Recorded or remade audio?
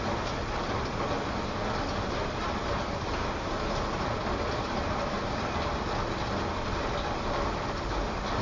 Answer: recorded